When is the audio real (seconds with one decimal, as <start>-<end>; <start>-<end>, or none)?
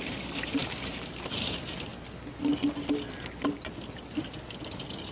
0.0-5.1